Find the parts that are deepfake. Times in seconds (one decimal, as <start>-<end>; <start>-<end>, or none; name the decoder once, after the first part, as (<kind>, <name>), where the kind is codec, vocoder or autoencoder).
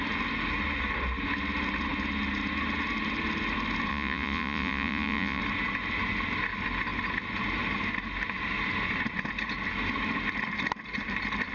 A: 3.9-5.4 (vocoder, Vocos)